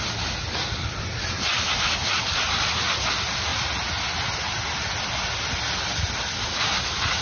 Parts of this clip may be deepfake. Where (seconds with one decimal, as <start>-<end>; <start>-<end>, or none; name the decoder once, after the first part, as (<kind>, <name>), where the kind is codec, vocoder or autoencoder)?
none